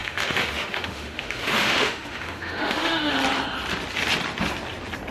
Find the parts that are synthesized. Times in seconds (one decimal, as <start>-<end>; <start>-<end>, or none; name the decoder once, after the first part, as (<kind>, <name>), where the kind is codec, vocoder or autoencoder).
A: 0.0-3.1 (autoencoder, DAC-VAE)